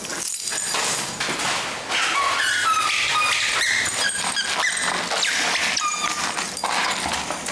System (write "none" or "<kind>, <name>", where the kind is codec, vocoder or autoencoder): none